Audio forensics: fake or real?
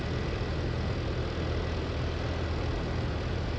real